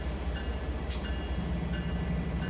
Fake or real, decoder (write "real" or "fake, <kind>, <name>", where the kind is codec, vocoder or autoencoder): real